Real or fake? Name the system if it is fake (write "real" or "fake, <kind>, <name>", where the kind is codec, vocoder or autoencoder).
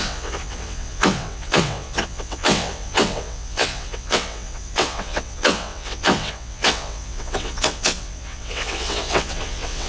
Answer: fake, vocoder, WaveNeXt